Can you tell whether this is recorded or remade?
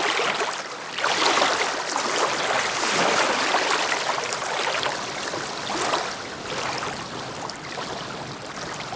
recorded